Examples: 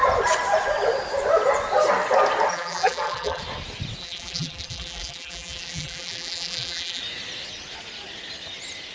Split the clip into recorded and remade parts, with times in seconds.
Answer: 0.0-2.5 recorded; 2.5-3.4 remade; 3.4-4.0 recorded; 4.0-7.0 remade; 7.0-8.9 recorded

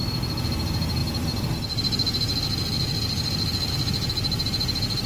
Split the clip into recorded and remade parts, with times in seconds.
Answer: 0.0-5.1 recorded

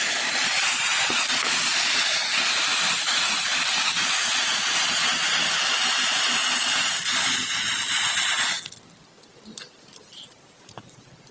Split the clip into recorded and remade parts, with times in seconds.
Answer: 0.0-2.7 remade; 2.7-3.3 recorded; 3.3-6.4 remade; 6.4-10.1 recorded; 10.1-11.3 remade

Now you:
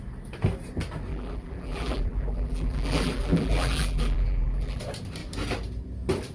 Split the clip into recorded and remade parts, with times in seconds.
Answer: 0.0-1.1 recorded; 1.1-4.8 remade; 4.8-6.3 recorded

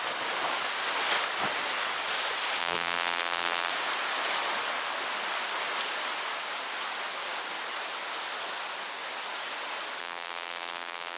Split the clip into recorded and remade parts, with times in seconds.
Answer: 0.0-2.6 recorded; 2.6-3.7 remade; 3.7-10.0 recorded; 10.0-11.2 remade

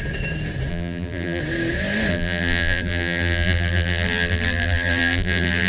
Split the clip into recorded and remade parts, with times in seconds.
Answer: 0.0-0.7 recorded; 0.7-1.4 remade; 1.4-2.1 recorded; 2.1-5.7 remade